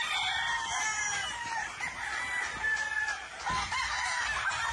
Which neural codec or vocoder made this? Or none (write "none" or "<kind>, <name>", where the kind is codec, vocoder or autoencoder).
none